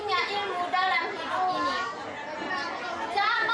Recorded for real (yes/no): yes